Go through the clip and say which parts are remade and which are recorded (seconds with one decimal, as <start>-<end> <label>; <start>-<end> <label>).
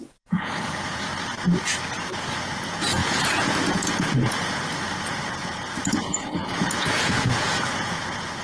0.0-1.1 remade; 1.1-2.0 recorded; 2.0-8.4 remade